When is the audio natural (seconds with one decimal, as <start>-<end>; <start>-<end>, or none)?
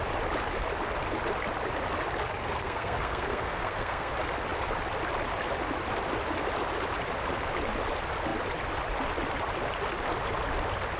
0.0-2.4; 4.1-11.0